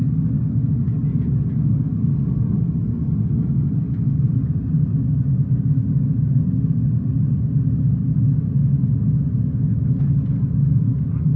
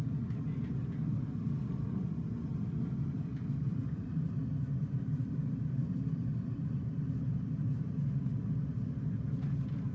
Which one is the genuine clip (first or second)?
first